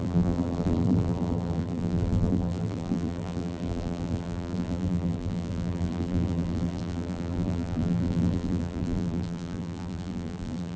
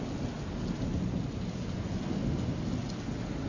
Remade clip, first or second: first